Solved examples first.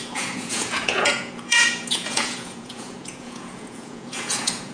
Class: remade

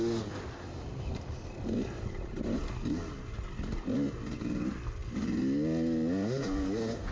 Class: recorded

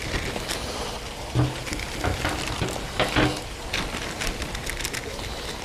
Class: recorded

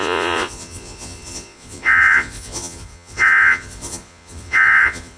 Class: remade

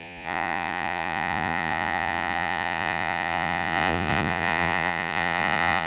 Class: remade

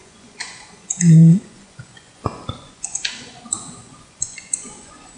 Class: remade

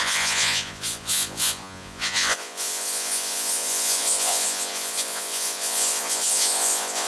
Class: remade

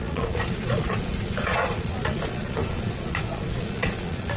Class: remade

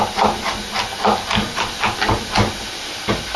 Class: recorded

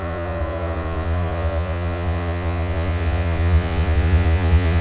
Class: remade